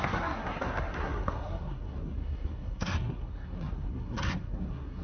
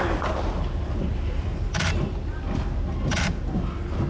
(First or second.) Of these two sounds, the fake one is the first